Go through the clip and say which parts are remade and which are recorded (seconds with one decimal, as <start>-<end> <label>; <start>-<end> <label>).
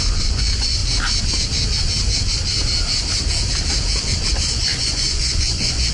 0.0-0.8 remade; 0.8-4.3 recorded; 4.3-5.9 remade